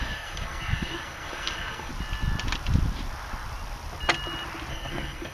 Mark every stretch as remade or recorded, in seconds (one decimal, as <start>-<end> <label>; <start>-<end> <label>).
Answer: 0.0-1.9 remade; 1.9-4.7 recorded; 4.7-5.3 remade